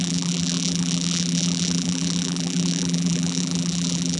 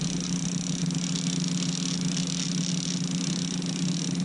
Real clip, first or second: second